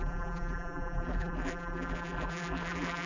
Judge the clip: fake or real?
fake